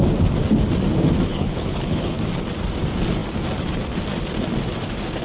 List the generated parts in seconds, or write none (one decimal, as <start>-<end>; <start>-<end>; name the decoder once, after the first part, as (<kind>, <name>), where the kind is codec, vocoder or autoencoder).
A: 1.3-2.2 (codec, HILCodec)